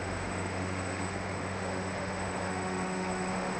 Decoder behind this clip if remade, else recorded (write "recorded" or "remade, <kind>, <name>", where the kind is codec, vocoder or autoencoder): remade, autoencoder, DAC-VAE